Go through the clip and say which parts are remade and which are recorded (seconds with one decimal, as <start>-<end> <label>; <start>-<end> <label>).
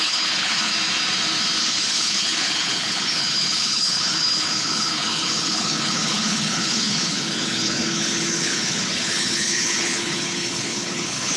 0.0-0.7 remade; 0.7-1.6 recorded; 1.6-11.4 remade